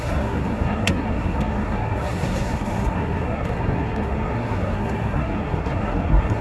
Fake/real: fake